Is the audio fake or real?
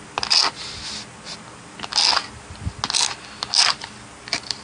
real